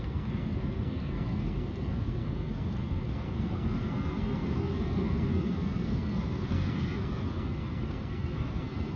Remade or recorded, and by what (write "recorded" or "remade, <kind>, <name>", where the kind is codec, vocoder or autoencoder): remade, codec, SNAC